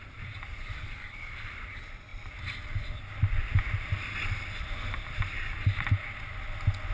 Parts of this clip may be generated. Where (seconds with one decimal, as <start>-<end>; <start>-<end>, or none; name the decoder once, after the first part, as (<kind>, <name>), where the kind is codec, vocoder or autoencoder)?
none